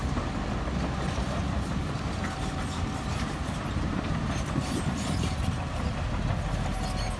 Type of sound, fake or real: real